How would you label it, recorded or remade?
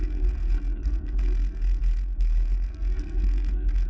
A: remade